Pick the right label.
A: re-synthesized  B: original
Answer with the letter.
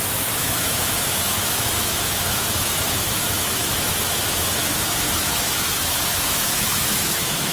A